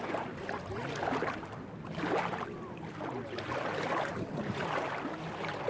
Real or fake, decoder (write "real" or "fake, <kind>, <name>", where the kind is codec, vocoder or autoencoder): real